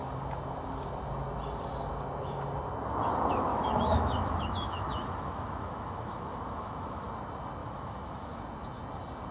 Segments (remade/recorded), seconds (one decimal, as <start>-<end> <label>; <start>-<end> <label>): 0.0-3.5 recorded; 3.5-7.1 remade; 7.1-7.6 recorded; 7.6-8.4 remade; 8.4-9.3 recorded